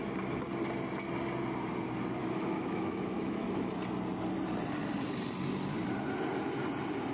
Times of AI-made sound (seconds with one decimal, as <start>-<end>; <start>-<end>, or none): 2.2-3.7